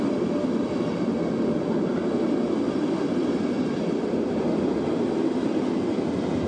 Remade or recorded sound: recorded